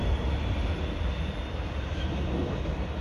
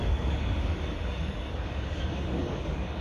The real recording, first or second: first